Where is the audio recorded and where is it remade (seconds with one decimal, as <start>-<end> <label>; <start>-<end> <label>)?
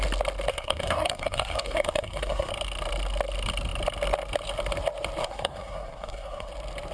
0.0-0.5 recorded; 0.5-2.5 remade; 2.5-5.2 recorded; 5.2-6.5 remade; 6.5-6.9 recorded